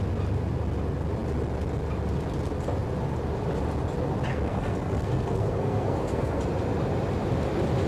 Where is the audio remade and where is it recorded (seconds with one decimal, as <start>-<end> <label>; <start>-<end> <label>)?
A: 0.0-4.3 recorded; 4.3-6.4 remade; 6.4-7.9 recorded